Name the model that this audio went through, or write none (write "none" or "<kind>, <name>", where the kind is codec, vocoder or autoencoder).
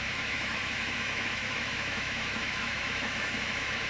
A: autoencoder, DAC-VAE